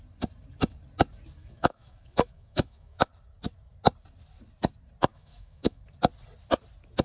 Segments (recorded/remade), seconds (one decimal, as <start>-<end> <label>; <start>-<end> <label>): 0.0-1.4 recorded; 1.4-3.1 remade; 3.1-5.1 recorded; 5.1-5.8 remade; 5.8-7.0 recorded